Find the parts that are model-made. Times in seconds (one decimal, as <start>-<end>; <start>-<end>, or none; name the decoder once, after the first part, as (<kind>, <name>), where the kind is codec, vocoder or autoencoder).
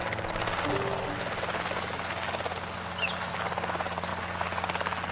none